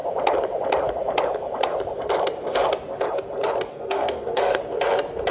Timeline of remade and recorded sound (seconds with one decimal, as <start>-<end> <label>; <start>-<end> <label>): 0.0-3.7 recorded; 3.7-4.6 remade; 4.6-5.3 recorded